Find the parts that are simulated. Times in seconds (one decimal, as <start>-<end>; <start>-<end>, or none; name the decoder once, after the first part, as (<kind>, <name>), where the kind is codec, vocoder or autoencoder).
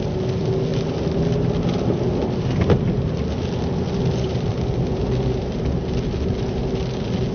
none